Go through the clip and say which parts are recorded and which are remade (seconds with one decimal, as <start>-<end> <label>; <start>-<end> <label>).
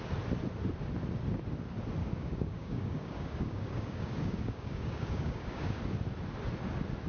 0.0-2.0 recorded; 2.0-5.8 remade; 5.8-7.1 recorded